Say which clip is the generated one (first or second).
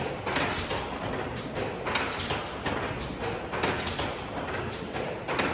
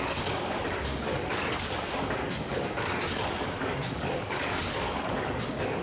second